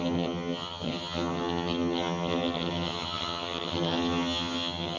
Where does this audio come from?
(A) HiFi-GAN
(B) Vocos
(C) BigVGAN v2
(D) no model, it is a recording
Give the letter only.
A